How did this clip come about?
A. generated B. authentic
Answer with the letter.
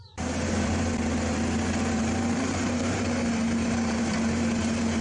A